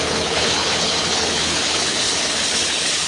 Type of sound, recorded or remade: remade